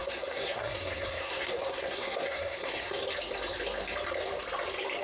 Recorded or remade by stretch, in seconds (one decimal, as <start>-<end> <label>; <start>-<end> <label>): 0.0-3.0 remade; 3.0-5.0 recorded

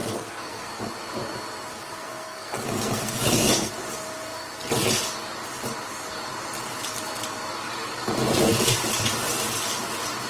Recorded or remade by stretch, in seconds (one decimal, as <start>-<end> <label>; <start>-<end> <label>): 0.0-0.8 remade; 0.8-1.7 recorded; 1.7-3.7 remade; 3.7-10.3 recorded

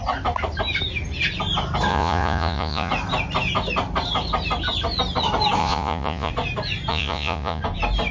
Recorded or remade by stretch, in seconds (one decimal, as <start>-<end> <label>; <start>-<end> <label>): 0.0-1.9 recorded; 1.9-2.9 remade; 2.9-5.6 recorded; 5.6-6.3 remade; 6.3-6.9 recorded; 6.9-7.6 remade; 7.6-8.1 recorded

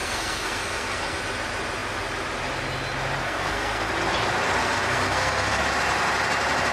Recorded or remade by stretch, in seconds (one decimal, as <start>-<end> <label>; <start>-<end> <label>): 0.0-1.2 remade; 1.2-3.2 recorded; 3.2-3.9 remade; 3.9-4.6 recorded; 4.6-5.6 remade; 5.6-6.7 recorded